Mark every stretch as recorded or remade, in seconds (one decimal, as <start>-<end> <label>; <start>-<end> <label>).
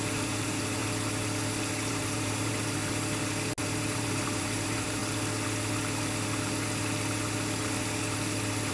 0.0-0.8 remade; 0.8-1.9 recorded; 1.9-2.8 remade; 2.8-3.6 recorded; 3.6-5.0 remade; 5.0-8.7 recorded